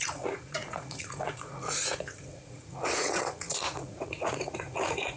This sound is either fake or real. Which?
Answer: fake